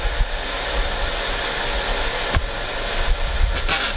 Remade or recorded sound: recorded